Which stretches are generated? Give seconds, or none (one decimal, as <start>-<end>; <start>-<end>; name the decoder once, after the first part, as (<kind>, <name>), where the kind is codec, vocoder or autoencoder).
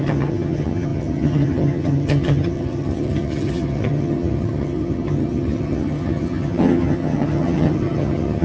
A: 0.0-8.4 (vocoder, HiFi-GAN)